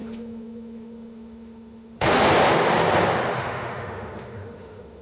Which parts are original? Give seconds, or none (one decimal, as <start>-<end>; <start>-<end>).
2.2-3.3